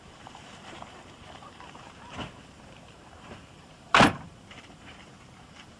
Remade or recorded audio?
remade